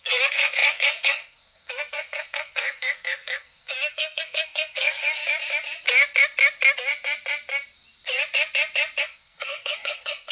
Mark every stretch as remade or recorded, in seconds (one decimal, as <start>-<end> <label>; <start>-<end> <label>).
0.0-5.2 remade; 5.2-9.0 recorded; 9.0-10.3 remade